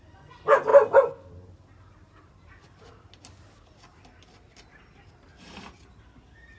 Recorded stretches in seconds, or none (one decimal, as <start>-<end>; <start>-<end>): 0.0-6.6